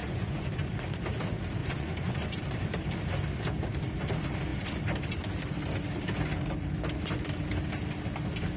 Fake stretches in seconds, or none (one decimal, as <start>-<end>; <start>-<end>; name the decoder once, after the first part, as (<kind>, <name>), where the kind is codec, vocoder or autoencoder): 0.0-0.5 (vocoder, Vocos); 1.6-2.4